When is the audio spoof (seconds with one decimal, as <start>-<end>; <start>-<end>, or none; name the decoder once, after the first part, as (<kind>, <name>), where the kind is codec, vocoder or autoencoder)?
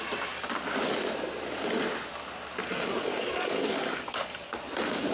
3.0-4.6 (codec, DAC)